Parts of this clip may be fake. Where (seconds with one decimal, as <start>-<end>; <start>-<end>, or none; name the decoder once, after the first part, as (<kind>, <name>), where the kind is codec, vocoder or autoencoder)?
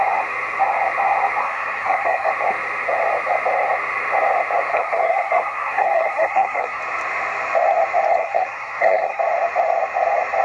1.4-2.3 (codec, SNAC); 4.7-6.8; 8.1-9.2